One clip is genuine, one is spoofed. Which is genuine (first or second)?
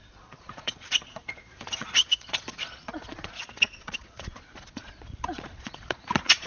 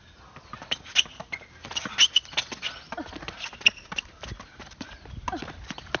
second